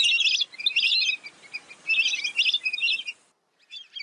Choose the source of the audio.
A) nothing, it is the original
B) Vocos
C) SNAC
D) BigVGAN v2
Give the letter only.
A